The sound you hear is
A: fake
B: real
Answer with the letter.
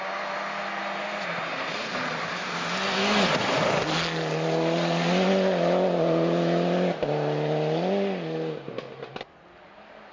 B